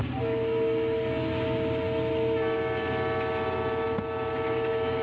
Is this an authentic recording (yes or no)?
yes